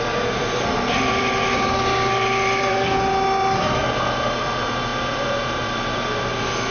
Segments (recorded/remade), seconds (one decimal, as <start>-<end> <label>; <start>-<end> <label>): 0.0-3.8 remade; 3.8-4.4 recorded; 4.4-6.7 remade